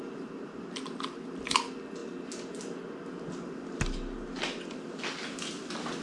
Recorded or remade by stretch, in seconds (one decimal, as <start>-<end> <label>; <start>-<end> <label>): 0.0-6.0 recorded